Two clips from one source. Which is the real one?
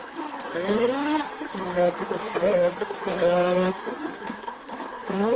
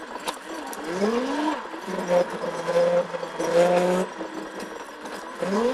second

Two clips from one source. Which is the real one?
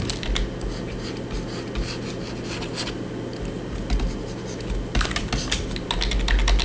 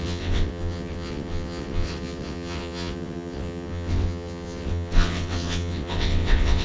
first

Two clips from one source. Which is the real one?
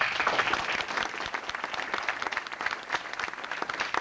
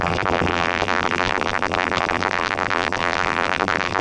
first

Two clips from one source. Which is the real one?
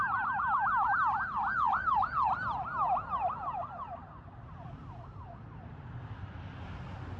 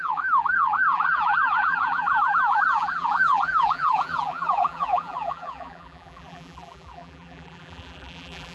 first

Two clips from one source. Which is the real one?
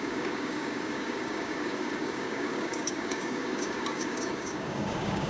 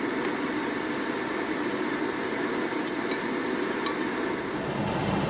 second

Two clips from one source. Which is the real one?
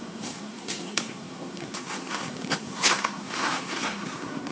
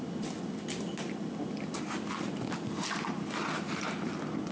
second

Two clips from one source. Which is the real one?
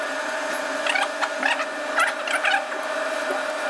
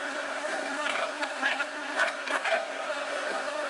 first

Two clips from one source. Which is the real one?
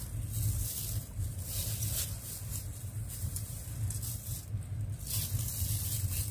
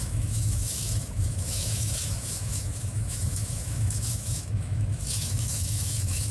first